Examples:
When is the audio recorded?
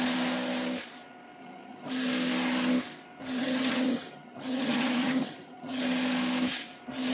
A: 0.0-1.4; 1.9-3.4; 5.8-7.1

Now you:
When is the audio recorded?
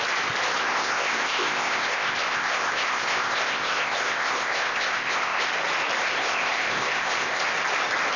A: 0.0-0.6; 5.5-6.0; 7.4-8.2